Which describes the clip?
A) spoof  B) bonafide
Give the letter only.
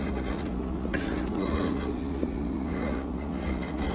A